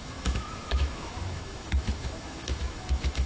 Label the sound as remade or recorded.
remade